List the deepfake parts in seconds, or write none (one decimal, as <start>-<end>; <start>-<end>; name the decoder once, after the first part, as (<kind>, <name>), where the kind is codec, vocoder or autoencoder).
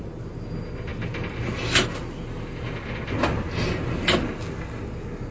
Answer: none